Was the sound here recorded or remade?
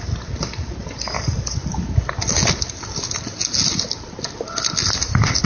recorded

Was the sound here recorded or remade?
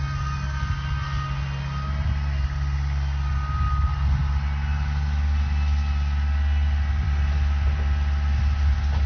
recorded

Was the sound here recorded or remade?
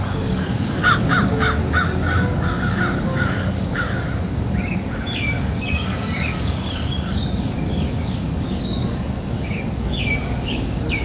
remade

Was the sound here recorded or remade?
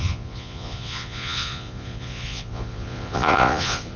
remade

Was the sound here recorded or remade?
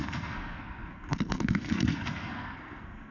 remade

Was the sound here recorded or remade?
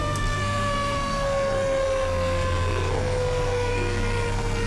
remade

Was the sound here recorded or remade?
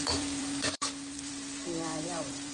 remade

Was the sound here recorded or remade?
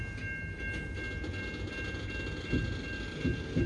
recorded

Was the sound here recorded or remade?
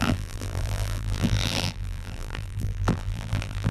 remade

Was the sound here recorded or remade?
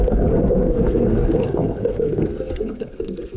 remade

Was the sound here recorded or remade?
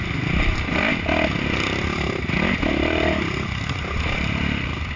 recorded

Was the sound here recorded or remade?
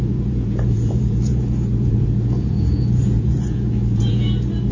remade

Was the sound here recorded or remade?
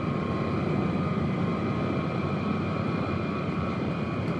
remade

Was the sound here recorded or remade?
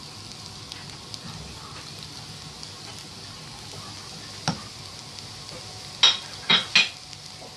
recorded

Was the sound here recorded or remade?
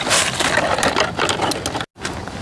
recorded